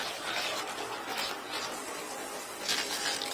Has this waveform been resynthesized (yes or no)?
no